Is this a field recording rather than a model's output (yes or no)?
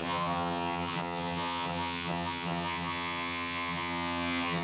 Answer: no